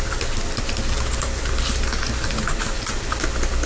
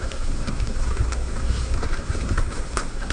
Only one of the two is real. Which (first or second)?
first